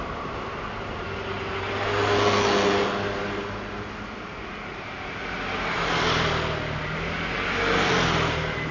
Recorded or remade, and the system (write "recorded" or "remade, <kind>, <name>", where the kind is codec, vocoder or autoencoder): recorded